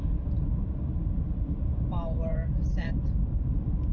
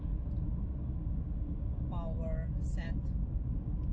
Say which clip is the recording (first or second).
second